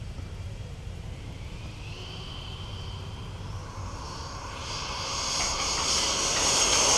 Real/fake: fake